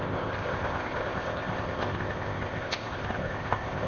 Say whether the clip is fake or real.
fake